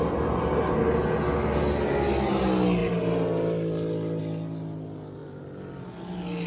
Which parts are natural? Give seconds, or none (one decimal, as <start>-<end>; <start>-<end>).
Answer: 0.0-6.5